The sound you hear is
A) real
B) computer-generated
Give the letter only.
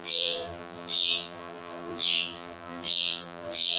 B